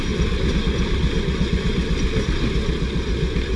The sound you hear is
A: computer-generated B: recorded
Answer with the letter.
B